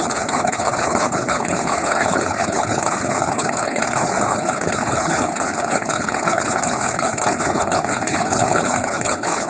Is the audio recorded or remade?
remade